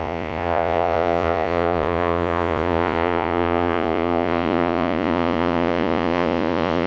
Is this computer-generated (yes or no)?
yes